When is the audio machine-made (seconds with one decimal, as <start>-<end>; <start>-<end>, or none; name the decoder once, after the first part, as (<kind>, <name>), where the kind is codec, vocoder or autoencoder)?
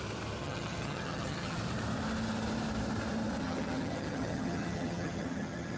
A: 0.4-1.6 (vocoder, HiFi-GAN); 3.4-5.8